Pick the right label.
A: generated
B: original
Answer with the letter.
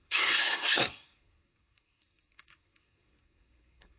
A